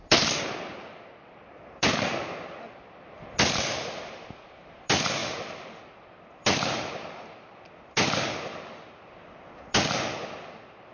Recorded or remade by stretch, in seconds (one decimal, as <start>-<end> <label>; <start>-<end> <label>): 0.0-10.9 recorded